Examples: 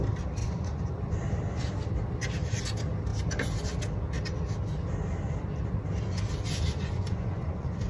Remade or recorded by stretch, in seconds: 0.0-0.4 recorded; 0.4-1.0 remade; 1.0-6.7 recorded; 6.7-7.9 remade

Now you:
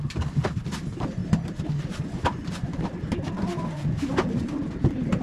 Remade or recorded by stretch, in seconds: 0.0-5.2 recorded

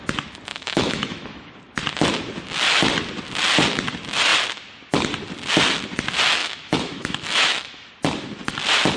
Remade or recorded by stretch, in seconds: 0.0-0.5 recorded; 0.5-1.5 remade; 1.5-6.4 recorded; 6.4-7.9 remade; 7.9-9.0 recorded